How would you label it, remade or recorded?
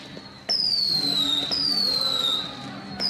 recorded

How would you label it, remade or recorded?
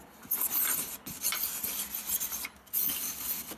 recorded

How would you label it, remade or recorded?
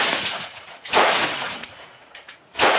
remade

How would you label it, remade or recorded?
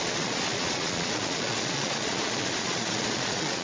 remade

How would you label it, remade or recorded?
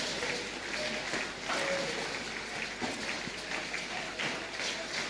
recorded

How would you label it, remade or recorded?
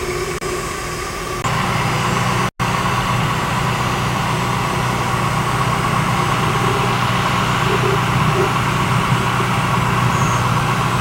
recorded